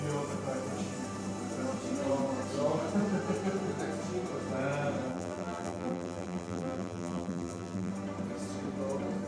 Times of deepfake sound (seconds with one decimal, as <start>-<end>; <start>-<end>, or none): 5.1-7.9